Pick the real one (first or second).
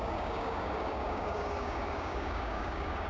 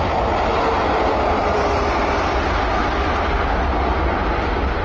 second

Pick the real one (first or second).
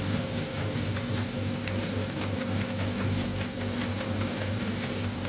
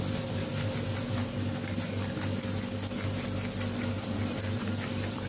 second